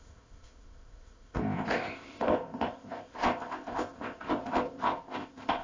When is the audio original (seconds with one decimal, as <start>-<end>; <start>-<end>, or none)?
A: none